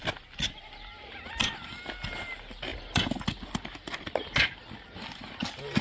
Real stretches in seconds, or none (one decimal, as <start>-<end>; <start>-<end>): 0.0-5.8